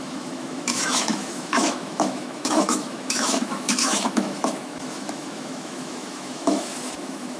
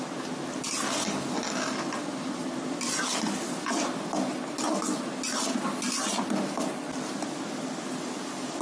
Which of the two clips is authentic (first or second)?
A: second